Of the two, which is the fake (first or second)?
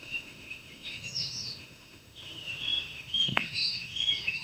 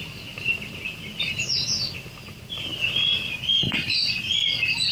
first